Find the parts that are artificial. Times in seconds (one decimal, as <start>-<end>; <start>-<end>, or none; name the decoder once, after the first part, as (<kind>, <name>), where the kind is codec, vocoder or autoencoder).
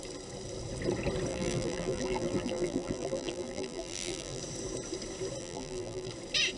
1.3-4.4 (vocoder, BigVGAN v2); 5.4-6.1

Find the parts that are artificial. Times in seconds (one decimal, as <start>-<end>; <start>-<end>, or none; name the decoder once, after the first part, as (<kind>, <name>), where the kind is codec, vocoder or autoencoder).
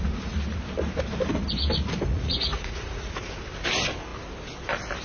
2.1-3.3 (vocoder, Vocos)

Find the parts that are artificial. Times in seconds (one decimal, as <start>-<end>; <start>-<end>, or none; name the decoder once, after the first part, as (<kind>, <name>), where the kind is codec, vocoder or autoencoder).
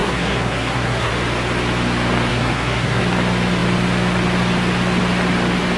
0.0-1.1 (codec, SNAC); 2.3-3.0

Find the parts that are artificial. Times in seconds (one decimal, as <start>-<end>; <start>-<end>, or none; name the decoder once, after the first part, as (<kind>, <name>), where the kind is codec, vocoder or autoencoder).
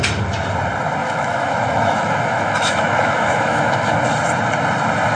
1.0-4.1 (autoencoder, DAC-VAE)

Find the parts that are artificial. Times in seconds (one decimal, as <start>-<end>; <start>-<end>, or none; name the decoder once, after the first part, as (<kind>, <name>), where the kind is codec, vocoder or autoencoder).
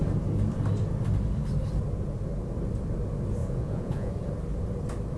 3.4-4.1 (vocoder, Vocos)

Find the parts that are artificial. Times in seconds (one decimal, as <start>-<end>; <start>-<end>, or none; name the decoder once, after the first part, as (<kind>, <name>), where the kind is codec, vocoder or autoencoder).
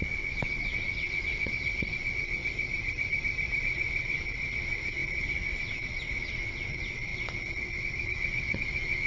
0.0-2.4 (vocoder, WaveNeXt); 3.6-9.1